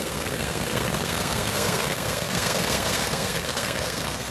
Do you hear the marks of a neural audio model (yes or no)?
yes